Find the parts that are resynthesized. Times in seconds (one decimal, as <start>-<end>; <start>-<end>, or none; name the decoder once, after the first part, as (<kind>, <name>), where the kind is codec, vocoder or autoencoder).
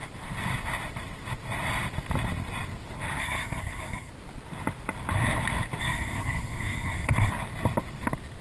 3.2-4.1 (codec, SNAC); 5.8-7.3